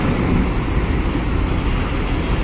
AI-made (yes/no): no